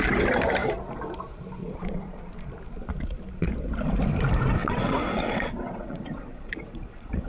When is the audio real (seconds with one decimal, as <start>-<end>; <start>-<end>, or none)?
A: 0.0-1.6; 2.3-4.6